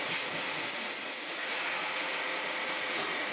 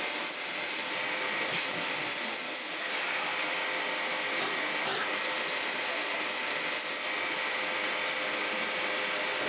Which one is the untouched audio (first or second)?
second